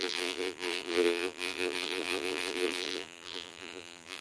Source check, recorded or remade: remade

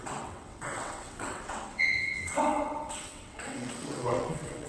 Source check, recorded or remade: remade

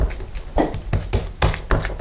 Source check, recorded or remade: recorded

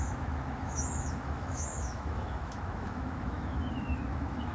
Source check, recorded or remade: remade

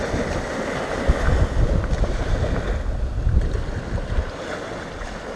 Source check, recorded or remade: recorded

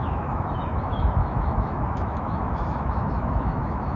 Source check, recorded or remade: remade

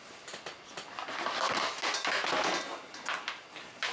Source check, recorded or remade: recorded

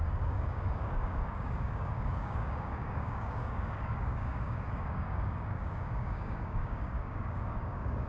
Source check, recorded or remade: remade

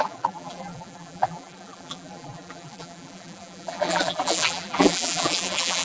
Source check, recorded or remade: remade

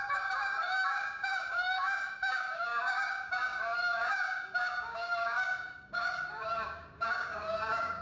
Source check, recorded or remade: remade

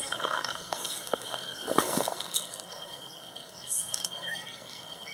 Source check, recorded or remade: remade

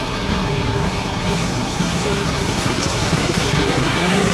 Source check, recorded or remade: remade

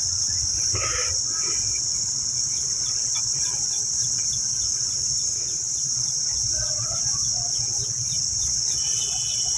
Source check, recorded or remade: remade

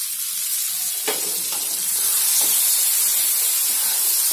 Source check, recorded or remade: recorded